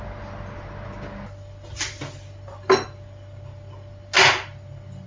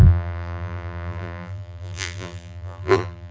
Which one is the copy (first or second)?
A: second